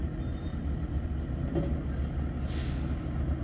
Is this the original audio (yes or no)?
yes